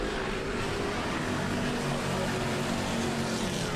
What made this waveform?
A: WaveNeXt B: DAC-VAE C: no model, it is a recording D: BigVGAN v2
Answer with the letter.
C